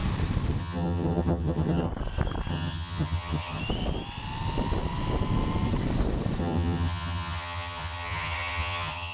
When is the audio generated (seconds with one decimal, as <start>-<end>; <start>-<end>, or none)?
0.6-1.9; 2.5-3.6; 6.4-9.1